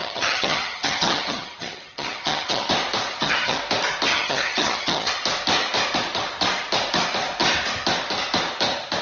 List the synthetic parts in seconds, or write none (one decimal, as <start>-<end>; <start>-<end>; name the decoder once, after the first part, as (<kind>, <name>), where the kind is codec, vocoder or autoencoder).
0.0-2.7 (vocoder, HiFi-GAN); 3.1-3.6; 4.1-5.1